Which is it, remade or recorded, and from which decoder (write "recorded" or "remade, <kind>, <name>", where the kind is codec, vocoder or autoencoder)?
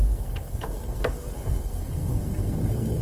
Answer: remade, codec, SNAC